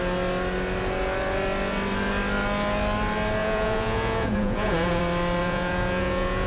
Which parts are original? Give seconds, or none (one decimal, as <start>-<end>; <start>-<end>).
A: 0.0-3.4; 5.0-5.4